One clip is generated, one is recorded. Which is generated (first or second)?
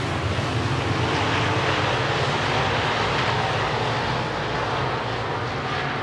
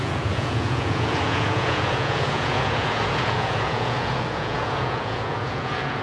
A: second